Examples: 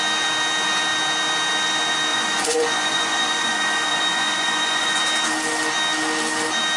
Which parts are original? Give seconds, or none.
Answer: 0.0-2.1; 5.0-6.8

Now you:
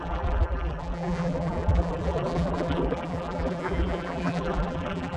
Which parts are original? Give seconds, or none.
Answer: none

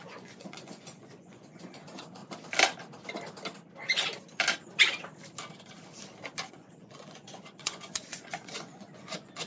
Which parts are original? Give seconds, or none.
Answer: 2.2-6.5

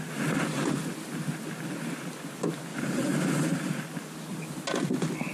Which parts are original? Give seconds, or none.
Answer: 0.0-2.7; 3.8-5.3

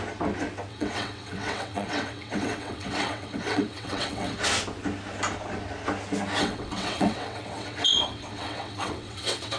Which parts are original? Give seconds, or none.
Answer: 0.0-0.7; 4.4-6.4